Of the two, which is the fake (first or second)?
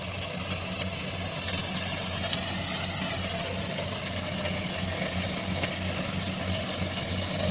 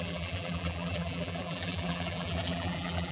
second